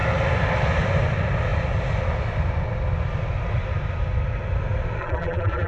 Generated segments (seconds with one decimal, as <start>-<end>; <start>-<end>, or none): 5.0-5.7